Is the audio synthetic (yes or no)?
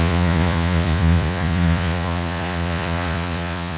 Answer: yes